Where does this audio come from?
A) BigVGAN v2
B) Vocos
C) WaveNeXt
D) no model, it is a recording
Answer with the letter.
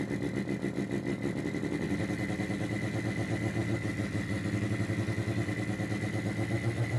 D